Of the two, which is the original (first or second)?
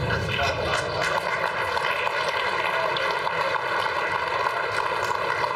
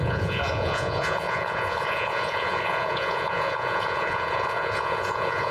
first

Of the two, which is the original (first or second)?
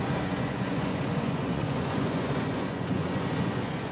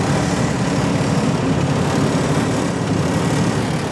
second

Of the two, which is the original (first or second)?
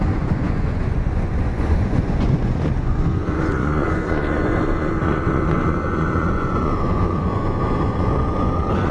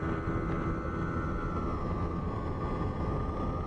second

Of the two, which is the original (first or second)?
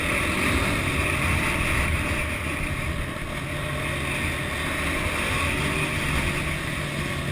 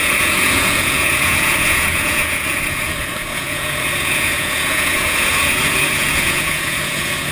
first